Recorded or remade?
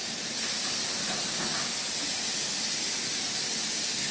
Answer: recorded